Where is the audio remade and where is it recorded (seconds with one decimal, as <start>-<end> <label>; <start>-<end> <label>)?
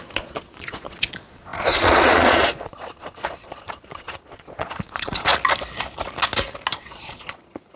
0.0-5.3 remade; 5.3-6.7 recorded; 6.7-7.8 remade